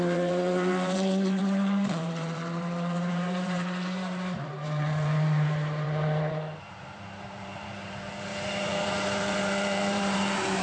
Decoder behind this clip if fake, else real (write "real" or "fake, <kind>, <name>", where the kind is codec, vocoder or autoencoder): fake, vocoder, BigVGAN v2